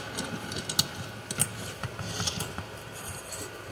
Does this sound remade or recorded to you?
recorded